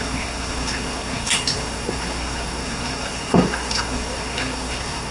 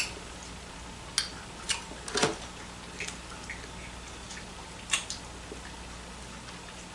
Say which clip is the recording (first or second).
second